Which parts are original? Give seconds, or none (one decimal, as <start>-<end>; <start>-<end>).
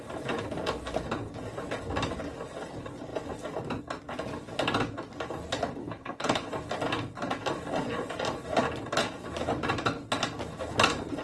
0.0-5.8; 6.5-11.2